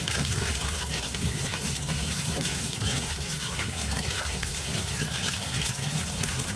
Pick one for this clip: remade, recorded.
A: remade